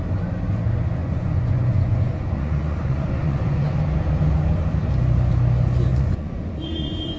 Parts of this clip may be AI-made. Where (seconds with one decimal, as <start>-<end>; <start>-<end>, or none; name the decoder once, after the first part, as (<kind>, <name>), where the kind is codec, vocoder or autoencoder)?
1.0-3.8 (vocoder, Vocos); 5.9-7.2